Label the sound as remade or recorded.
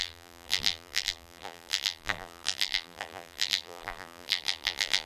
remade